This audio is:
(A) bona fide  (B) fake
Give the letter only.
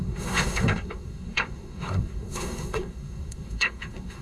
B